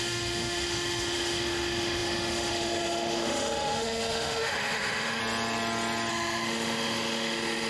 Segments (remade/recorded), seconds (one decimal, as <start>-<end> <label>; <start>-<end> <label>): 0.0-5.2 remade; 5.2-6.1 recorded; 6.1-7.7 remade